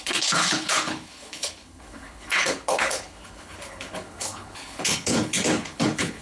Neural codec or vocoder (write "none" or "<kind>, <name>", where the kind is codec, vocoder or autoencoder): codec, HILCodec